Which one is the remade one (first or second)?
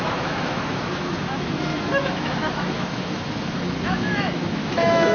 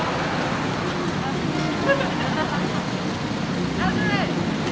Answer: first